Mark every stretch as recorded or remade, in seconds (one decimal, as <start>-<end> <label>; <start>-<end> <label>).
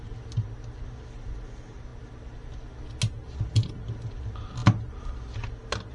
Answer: 0.0-5.9 recorded